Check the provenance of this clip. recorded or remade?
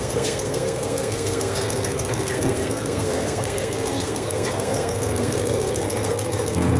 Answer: remade